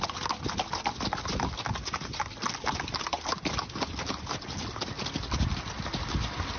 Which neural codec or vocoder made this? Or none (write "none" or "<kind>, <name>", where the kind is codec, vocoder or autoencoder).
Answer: none